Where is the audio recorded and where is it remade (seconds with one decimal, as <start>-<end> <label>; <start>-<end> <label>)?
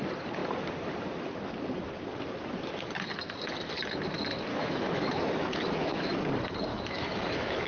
0.0-4.5 recorded; 4.5-6.3 remade; 6.3-6.7 recorded; 6.7-7.7 remade